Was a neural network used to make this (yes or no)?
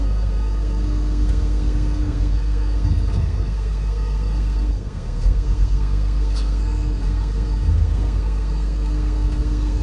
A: yes